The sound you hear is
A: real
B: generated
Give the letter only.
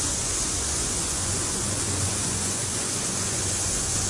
B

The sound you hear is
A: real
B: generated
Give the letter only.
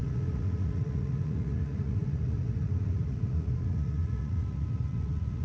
B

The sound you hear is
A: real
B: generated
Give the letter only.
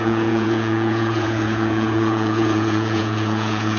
B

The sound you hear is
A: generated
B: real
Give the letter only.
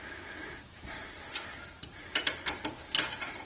B